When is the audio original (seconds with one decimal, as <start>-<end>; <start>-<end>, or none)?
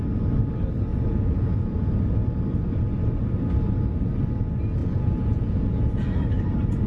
0.0-0.9; 1.9-4.8; 6.1-6.9